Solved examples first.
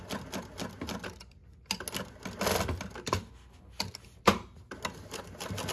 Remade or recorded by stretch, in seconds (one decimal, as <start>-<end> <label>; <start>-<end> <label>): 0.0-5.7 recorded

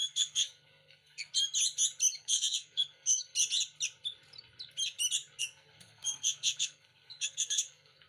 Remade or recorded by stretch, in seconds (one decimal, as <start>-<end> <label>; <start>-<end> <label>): 0.0-1.3 remade; 1.3-2.2 recorded; 2.2-3.3 remade; 3.3-5.4 recorded; 5.4-8.1 remade

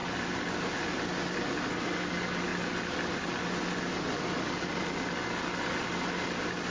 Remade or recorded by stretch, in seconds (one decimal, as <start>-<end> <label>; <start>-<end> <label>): 0.0-6.7 recorded

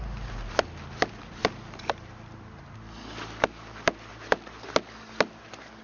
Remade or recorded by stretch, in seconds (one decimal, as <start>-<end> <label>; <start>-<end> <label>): 0.0-5.8 recorded

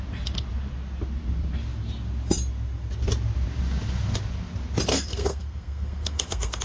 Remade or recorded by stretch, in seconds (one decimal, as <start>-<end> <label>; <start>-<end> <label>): 0.0-4.9 recorded; 4.9-6.6 remade

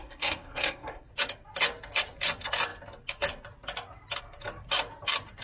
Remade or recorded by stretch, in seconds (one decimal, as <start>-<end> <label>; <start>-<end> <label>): 0.0-1.1 remade; 1.1-5.4 recorded

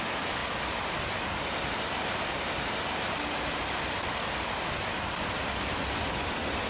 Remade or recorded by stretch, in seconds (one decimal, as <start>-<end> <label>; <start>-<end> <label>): 0.0-6.7 recorded

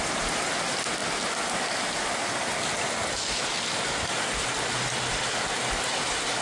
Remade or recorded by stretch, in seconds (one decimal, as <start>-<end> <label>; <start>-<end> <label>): 0.0-6.4 recorded